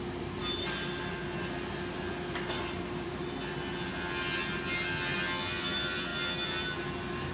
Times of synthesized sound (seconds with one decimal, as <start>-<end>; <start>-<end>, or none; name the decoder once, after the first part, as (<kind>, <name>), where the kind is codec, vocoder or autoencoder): none

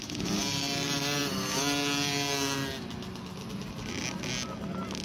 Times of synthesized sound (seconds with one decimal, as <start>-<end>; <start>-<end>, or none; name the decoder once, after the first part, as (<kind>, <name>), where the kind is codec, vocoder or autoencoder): none

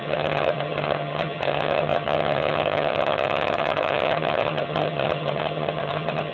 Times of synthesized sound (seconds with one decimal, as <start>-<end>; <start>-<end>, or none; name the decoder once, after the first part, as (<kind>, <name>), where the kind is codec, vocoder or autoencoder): 0.0-6.3 (vocoder, HiFi-GAN)

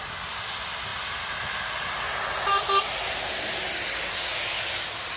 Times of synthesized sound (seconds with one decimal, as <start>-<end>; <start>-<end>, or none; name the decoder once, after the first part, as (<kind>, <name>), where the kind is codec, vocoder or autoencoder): none

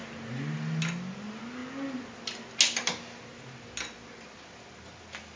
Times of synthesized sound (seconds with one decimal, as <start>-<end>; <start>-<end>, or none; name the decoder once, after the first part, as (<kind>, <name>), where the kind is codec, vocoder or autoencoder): none

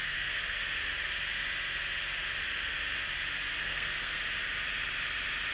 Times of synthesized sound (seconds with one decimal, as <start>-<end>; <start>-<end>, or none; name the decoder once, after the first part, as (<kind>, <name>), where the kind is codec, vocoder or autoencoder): 0.0-0.6 (codec, SNAC); 3.6-4.2

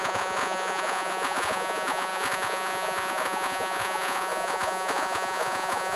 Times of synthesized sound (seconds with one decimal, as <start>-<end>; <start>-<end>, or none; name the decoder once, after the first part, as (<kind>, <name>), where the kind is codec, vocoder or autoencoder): 0.0-6.0 (vocoder, Vocos)